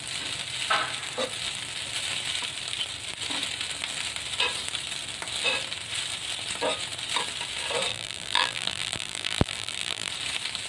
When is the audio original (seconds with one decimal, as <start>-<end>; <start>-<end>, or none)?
0.0-7.9; 10.1-10.7